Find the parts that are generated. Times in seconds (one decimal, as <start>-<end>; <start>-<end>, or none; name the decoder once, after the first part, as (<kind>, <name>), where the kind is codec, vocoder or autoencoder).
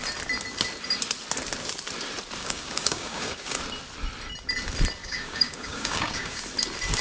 2.4-3.6 (codec, DAC); 5.0-6.4